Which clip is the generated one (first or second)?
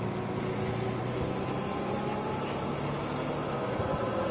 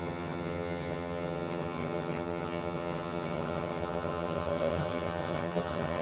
second